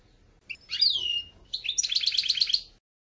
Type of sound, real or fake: real